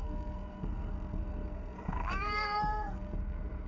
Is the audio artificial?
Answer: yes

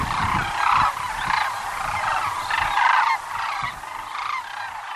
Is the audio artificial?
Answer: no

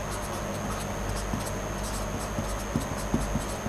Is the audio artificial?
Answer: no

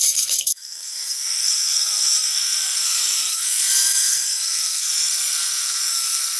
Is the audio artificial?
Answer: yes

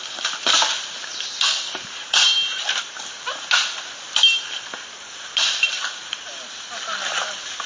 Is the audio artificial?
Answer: no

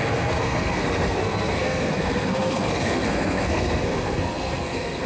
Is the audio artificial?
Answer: yes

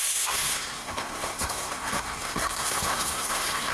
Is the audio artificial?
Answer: yes